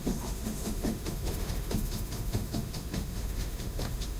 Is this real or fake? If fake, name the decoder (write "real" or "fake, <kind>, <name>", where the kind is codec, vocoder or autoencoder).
fake, autoencoder, DAC-VAE